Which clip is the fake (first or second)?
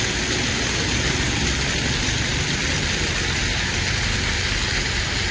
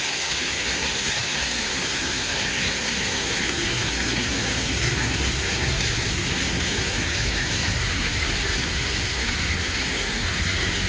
second